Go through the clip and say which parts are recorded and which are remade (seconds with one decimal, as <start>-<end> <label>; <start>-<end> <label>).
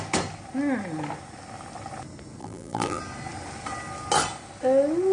0.0-2.4 recorded; 2.4-3.0 remade; 3.0-5.1 recorded